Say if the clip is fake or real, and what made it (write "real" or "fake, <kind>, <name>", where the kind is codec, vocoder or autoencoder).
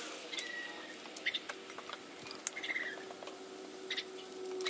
real